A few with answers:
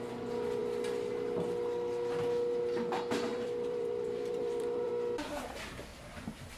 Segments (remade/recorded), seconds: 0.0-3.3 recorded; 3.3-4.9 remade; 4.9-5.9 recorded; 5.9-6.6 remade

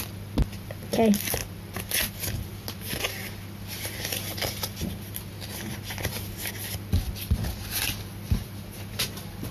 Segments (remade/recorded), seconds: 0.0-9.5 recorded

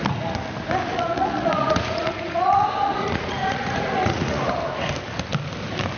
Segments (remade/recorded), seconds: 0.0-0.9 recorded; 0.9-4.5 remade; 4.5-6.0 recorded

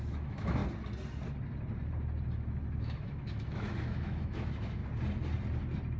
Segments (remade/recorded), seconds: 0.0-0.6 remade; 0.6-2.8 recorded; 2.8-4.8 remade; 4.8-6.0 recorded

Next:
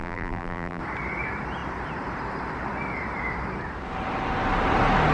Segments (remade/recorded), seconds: 0.0-0.8 remade; 0.8-5.1 recorded

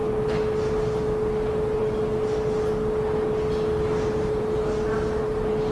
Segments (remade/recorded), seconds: 0.0-5.7 recorded

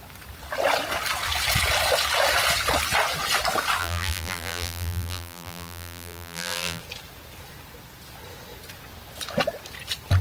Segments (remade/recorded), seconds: 0.0-3.8 recorded; 3.8-6.8 remade; 6.8-10.2 recorded

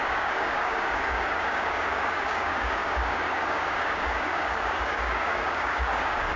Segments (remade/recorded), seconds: 0.0-6.4 remade